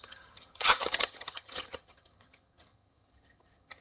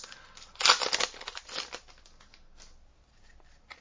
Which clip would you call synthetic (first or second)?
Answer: first